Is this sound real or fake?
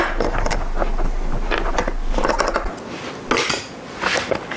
real